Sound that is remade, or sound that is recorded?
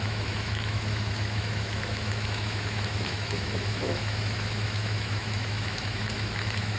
remade